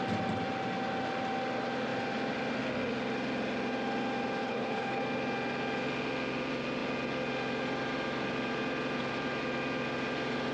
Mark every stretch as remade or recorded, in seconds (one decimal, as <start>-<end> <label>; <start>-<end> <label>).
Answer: 0.0-4.4 recorded; 4.4-5.0 remade; 5.0-10.5 recorded